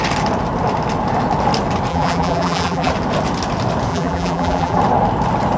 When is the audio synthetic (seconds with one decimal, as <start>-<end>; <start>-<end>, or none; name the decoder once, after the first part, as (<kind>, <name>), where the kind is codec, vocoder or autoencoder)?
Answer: 1.9-2.9 (vocoder, BigVGAN v2); 3.9-4.8